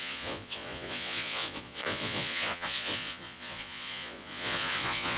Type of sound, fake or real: fake